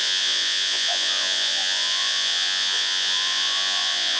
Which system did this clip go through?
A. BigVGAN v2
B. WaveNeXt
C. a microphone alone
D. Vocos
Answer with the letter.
D